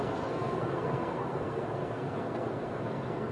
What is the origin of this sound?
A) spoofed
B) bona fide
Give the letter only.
A